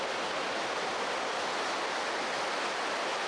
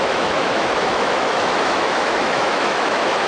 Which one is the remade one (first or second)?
second